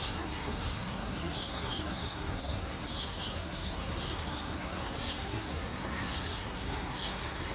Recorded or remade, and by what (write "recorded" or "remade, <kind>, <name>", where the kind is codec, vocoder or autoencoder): remade, codec, SNAC